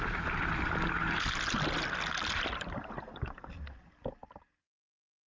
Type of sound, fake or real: real